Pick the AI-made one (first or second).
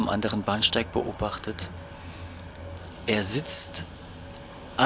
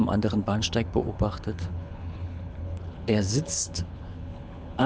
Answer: second